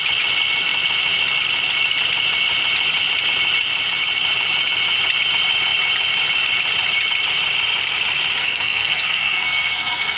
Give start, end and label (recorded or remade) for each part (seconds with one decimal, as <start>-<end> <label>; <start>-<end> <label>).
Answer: 0.0-8.4 recorded; 8.4-10.2 remade